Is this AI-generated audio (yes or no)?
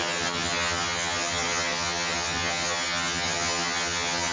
yes